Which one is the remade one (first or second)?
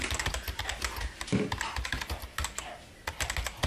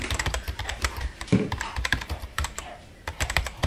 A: second